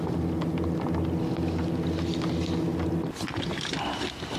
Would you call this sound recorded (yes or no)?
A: yes